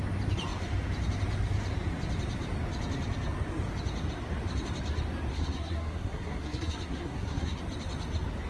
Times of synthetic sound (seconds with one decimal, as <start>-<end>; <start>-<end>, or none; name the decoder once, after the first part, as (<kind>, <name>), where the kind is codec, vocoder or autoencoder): 5.3-7.6 (codec, SNAC)